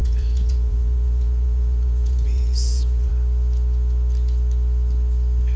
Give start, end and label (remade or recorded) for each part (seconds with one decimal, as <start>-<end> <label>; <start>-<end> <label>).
0.0-3.1 remade; 3.1-5.6 recorded

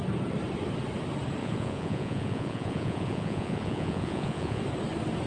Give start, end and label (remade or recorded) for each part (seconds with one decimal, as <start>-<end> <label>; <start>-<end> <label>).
0.0-1.4 recorded; 1.4-4.6 remade; 4.6-5.3 recorded

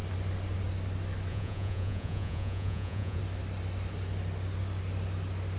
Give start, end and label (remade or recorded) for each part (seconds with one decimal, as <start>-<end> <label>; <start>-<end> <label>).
0.0-1.3 recorded; 1.3-3.2 remade; 3.2-5.6 recorded

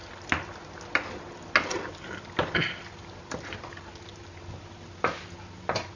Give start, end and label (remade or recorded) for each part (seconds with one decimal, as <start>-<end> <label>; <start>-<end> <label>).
0.0-6.0 recorded

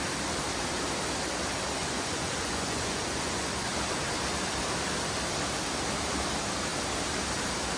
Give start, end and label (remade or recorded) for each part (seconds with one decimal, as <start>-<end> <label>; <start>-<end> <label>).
0.0-1.8 recorded; 1.8-3.7 remade; 3.7-7.8 recorded

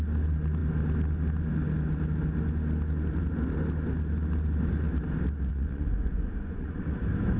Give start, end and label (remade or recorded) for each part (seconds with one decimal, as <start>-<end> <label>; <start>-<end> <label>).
0.0-5.5 recorded; 5.5-6.8 remade; 6.8-7.4 recorded

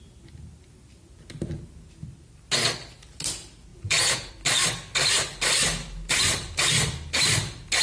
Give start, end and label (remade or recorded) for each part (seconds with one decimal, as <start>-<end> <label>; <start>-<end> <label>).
0.0-3.7 recorded; 3.7-4.3 remade; 4.3-7.8 recorded

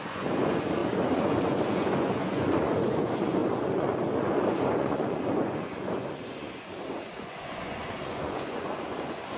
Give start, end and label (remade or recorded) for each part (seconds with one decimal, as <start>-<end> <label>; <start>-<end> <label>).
0.0-9.4 remade